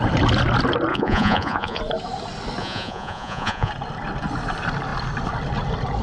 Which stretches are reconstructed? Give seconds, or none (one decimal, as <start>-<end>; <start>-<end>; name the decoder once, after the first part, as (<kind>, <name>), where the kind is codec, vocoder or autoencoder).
0.9-1.8 (vocoder, Vocos); 2.6-3.7